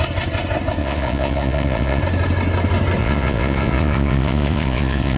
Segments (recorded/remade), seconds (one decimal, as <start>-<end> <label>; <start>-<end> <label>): 0.0-0.8 recorded; 0.8-2.0 remade; 2.0-3.0 recorded; 3.0-5.2 remade